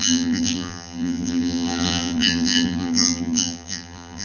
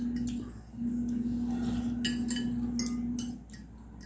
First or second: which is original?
second